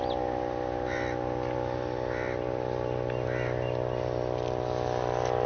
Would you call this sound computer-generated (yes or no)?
no